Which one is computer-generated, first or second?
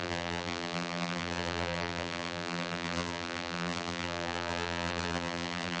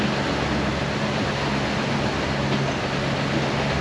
first